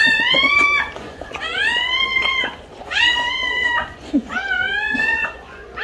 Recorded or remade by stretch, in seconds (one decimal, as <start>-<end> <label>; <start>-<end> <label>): 0.0-5.8 remade